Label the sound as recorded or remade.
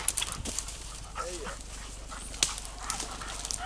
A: recorded